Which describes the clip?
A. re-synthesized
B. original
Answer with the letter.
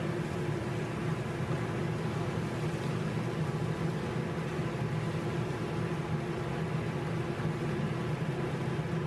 B